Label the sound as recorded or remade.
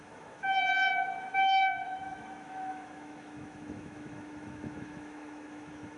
remade